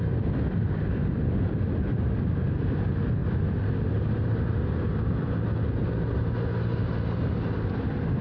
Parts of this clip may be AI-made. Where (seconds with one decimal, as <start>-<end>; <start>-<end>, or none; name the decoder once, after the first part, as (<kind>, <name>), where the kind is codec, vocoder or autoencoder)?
none